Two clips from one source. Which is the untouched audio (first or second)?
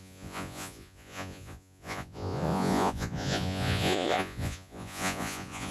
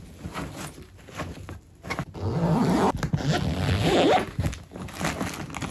second